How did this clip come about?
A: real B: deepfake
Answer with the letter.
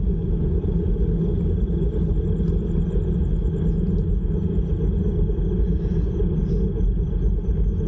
A